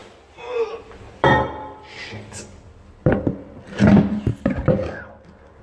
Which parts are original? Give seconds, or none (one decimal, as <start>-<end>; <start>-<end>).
none